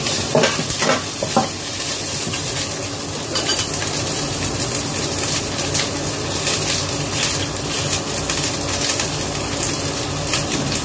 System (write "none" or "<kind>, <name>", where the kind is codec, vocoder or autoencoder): none